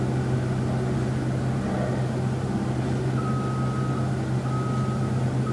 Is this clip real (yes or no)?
yes